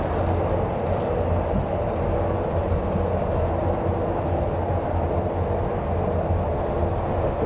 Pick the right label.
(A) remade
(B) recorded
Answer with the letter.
B